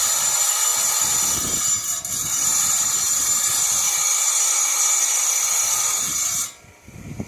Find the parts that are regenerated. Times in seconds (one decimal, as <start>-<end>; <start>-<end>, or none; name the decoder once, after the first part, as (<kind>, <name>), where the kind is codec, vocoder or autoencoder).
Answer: none